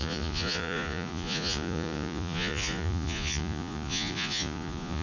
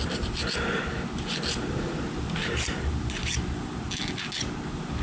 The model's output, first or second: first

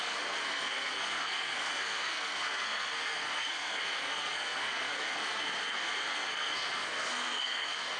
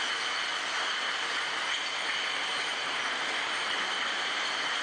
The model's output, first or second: first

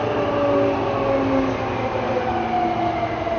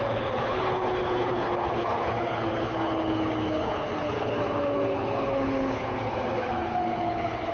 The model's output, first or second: second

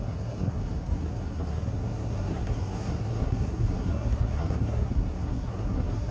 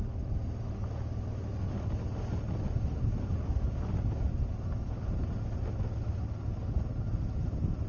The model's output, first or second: first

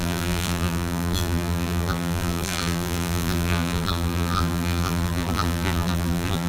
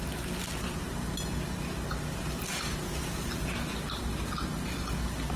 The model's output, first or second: first